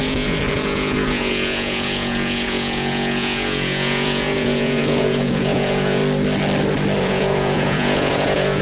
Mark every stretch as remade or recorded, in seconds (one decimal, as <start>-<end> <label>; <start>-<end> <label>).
0.0-6.0 remade; 6.0-7.0 recorded; 7.0-8.6 remade